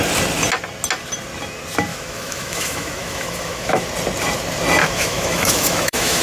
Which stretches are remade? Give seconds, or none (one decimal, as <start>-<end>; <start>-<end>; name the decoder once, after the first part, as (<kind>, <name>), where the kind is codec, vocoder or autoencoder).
1.9-3.9 (autoencoder, DAC-VAE); 4.8-6.2